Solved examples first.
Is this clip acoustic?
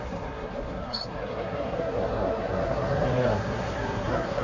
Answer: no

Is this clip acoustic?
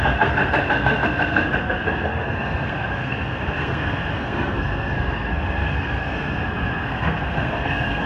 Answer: no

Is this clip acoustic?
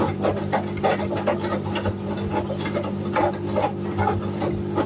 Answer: yes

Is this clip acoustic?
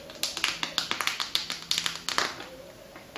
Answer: yes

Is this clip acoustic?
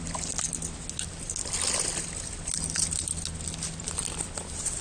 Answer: yes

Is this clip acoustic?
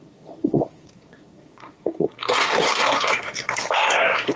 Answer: no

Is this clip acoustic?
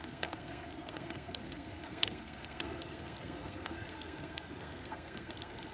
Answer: no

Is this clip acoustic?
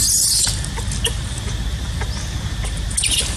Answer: yes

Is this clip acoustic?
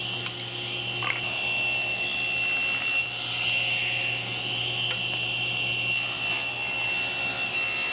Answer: yes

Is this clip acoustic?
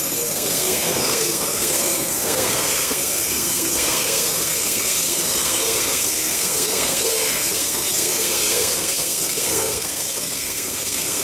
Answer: no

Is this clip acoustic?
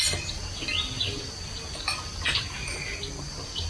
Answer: yes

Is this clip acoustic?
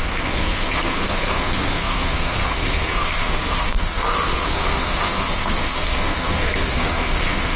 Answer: no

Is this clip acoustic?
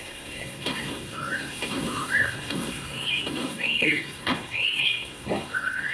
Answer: no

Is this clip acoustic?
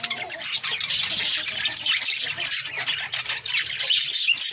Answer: yes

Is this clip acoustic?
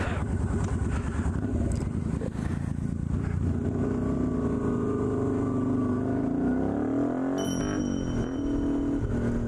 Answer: yes